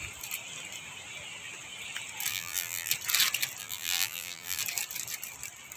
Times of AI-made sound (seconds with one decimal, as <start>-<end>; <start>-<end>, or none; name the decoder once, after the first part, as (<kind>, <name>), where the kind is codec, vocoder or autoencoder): 2.3-2.9 (vocoder, BigVGAN v2); 3.6-4.6